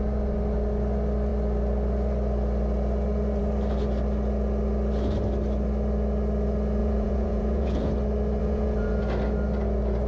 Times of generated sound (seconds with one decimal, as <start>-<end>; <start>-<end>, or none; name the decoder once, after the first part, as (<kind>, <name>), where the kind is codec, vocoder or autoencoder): 6.8-7.9 (vocoder, Vocos); 8.4-9.0